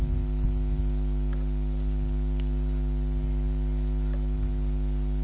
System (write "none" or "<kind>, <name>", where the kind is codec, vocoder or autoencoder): none